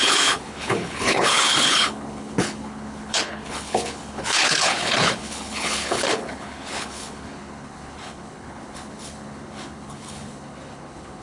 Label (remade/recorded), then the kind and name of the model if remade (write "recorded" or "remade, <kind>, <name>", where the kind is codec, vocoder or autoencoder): remade, codec, HILCodec